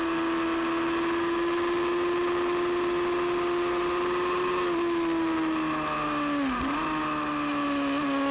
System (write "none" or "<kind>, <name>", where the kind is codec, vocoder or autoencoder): none